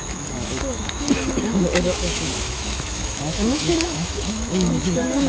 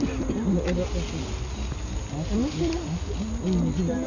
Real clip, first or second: second